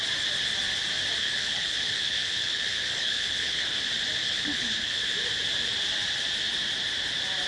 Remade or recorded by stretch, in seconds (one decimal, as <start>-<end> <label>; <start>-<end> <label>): 0.0-1.2 recorded; 1.2-3.8 remade; 3.8-4.2 recorded; 4.2-5.1 remade; 5.1-7.5 recorded